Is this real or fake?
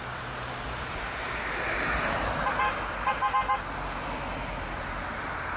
real